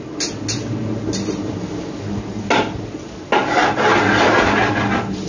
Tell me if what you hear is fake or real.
real